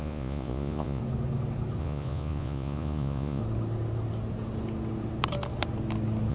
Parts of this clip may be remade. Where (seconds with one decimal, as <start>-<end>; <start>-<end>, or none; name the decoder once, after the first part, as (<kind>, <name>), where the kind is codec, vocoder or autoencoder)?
0.0-1.0 (vocoder, Vocos); 1.8-3.4